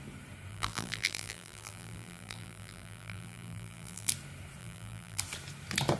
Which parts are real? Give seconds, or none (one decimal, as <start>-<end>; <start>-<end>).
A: 0.0-0.5; 4.1-4.6; 5.2-6.0